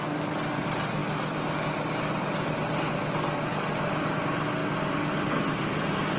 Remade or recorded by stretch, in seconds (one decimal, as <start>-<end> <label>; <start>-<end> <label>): 0.0-6.2 recorded